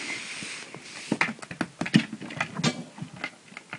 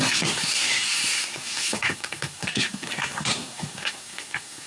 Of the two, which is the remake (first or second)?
second